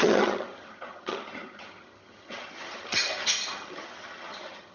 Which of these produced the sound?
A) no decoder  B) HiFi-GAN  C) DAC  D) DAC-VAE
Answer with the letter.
B